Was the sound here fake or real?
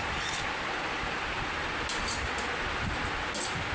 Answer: real